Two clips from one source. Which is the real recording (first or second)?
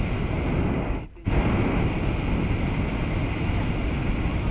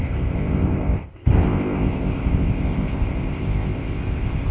first